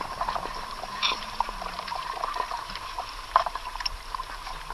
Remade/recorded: remade